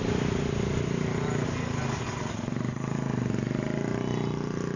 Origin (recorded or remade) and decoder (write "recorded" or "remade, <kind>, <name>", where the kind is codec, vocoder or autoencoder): recorded